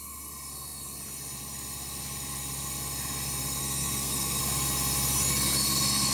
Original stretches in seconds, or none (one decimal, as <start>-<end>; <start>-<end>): 0.0-3.6; 4.4-6.1